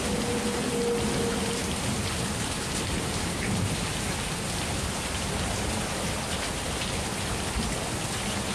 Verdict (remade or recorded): recorded